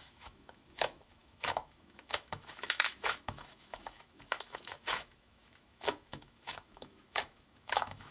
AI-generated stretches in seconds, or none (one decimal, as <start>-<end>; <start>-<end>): 0.0-8.1